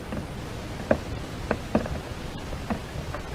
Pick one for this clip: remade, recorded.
recorded